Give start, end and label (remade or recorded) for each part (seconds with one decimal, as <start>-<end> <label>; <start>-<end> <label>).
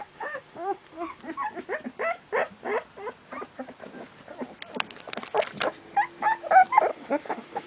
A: 0.0-1.2 remade; 1.2-6.9 recorded; 6.9-7.7 remade